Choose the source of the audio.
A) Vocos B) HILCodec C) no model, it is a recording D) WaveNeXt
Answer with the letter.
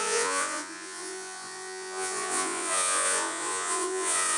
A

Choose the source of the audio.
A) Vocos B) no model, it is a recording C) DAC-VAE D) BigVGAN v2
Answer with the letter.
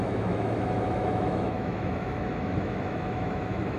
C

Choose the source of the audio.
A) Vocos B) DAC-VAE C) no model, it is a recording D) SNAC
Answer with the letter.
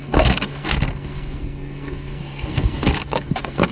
D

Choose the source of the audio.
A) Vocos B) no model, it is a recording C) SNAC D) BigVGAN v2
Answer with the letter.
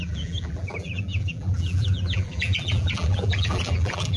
D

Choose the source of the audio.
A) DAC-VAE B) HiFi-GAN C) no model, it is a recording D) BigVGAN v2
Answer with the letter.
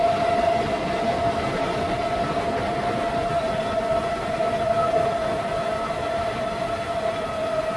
C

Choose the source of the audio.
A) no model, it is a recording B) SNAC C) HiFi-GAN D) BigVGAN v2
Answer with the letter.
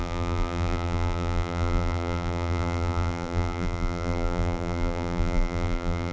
D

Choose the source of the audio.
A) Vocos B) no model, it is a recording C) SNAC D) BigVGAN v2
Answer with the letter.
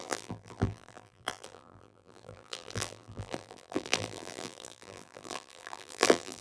D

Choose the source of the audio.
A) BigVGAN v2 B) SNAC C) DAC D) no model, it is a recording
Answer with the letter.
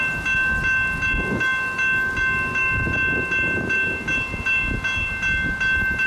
D